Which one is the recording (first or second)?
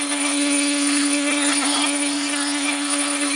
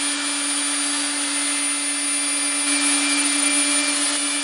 second